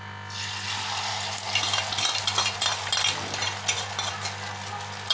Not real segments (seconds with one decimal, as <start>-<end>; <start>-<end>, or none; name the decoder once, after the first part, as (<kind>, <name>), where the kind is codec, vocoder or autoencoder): none